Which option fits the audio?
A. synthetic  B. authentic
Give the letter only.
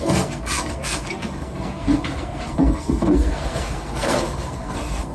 A